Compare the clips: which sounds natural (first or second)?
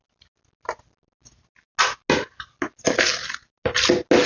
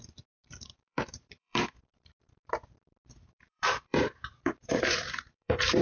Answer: first